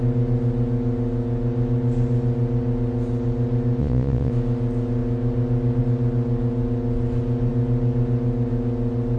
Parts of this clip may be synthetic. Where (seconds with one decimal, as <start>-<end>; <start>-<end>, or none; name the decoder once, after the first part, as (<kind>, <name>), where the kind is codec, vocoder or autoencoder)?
3.8-4.3 (vocoder, Vocos)